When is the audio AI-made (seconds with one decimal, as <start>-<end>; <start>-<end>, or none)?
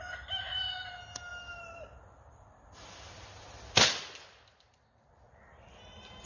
none